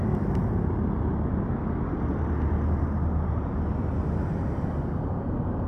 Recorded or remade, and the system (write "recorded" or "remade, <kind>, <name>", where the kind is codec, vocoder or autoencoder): recorded